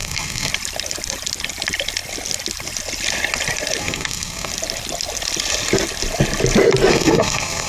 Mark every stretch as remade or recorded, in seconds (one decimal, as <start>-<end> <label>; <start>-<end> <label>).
0.0-0.5 remade; 0.5-3.8 recorded; 3.8-4.5 remade; 4.5-6.9 recorded; 6.9-7.7 remade